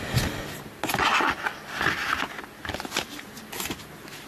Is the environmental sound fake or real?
real